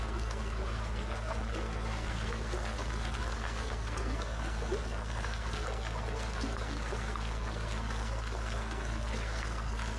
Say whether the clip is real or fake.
fake